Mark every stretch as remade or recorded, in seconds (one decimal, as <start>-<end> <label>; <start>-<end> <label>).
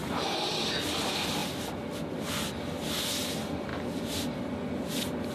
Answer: 0.0-5.3 recorded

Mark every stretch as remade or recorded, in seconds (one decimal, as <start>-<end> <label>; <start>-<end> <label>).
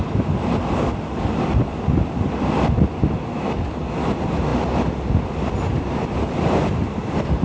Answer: 0.0-4.5 remade; 4.5-5.8 recorded; 5.8-7.4 remade